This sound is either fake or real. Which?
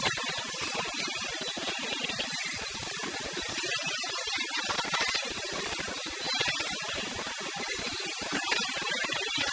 fake